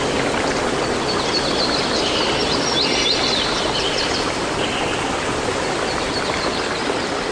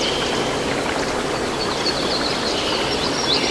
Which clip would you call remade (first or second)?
second